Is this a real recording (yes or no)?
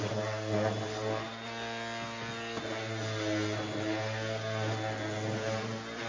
yes